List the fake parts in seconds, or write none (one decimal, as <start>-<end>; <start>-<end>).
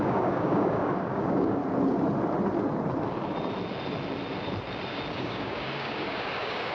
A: 0.0-1.6; 5.1-6.7